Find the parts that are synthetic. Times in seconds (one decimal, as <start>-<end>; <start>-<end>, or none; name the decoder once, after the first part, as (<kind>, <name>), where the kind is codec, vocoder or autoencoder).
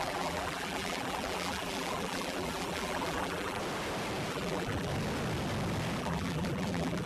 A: 0.0-3.6 (vocoder, BigVGAN v2); 4.3-4.9; 6.0-7.1